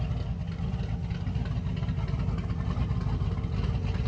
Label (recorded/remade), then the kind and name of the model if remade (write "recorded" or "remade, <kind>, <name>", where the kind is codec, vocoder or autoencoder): recorded